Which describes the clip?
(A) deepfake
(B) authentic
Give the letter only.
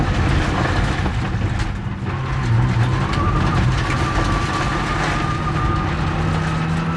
B